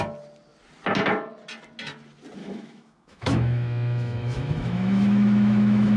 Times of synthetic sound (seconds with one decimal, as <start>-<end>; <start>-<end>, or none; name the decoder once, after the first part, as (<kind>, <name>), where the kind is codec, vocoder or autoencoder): 2.4-6.0 (autoencoder, DAC-VAE)